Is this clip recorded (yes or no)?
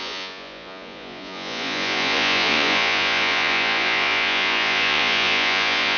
no